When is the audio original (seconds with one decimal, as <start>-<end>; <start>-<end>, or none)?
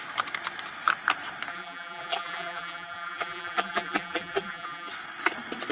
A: 0.0-1.5; 4.9-5.7